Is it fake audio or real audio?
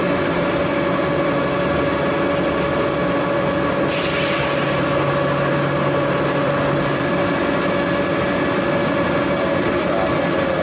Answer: real